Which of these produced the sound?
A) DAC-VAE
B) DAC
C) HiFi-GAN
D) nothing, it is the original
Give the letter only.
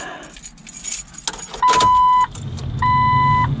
D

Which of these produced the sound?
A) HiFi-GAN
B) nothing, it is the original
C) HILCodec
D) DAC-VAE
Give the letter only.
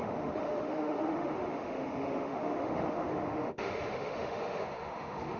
D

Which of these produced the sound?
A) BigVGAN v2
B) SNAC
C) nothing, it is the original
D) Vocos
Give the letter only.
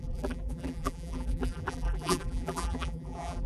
A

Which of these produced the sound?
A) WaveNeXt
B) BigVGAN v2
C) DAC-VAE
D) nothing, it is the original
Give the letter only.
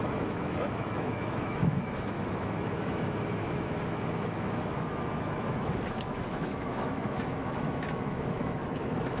C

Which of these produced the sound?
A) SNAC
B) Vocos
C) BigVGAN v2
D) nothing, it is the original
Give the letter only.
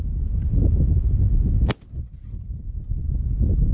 D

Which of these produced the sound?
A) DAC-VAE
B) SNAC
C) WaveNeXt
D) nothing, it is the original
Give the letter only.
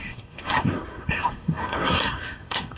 B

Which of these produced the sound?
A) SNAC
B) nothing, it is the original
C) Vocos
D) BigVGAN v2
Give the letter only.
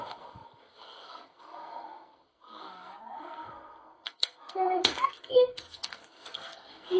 A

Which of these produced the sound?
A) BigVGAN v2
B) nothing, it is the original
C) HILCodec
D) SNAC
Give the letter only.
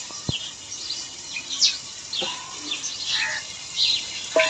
B